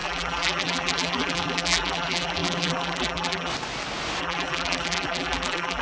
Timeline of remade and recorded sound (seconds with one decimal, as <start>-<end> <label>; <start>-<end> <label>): 0.0-3.5 remade; 3.5-4.2 recorded; 4.2-5.8 remade